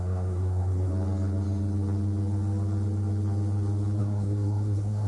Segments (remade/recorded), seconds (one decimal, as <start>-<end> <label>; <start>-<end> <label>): 0.0-0.9 remade; 0.9-4.0 recorded; 4.0-5.1 remade